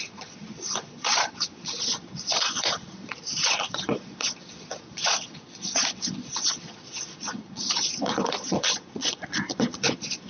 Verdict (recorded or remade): remade